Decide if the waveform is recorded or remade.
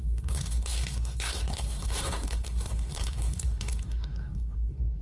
remade